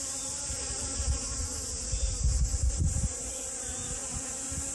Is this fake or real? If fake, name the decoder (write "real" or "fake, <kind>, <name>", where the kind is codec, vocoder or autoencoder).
real